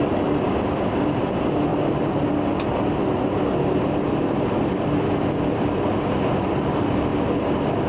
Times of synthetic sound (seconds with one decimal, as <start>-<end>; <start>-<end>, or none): none